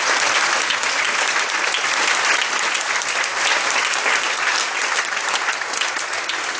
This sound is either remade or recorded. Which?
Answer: recorded